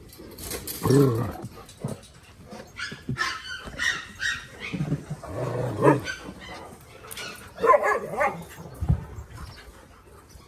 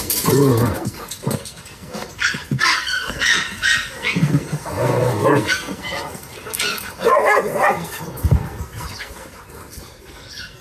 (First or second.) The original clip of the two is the first